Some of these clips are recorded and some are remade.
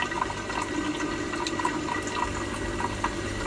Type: recorded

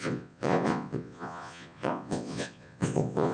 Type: remade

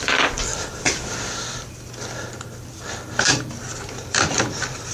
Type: remade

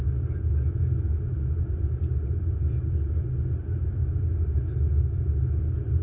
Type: recorded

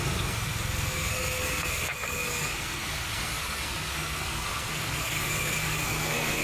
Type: remade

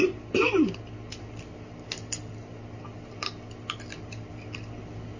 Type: recorded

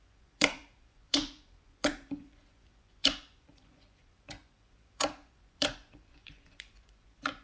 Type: remade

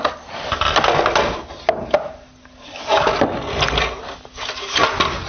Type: recorded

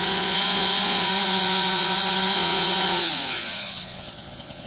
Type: remade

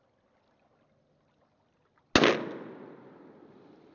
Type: recorded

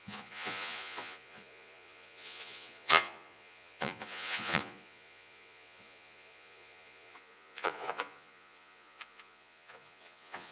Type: remade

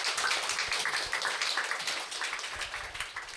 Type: recorded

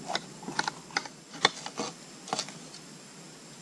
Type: recorded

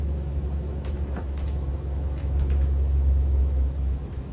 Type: remade